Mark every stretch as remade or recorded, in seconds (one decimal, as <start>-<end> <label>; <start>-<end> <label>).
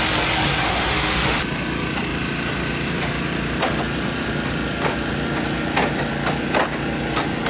0.0-0.6 recorded; 0.6-1.4 remade; 1.4-7.5 recorded